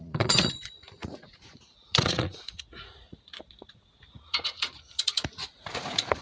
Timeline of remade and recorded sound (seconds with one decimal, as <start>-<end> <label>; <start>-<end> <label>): 0.0-6.2 remade